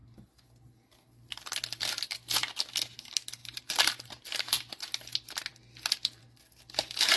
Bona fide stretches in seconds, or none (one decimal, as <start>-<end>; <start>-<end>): 0.0-3.4; 4.7-7.2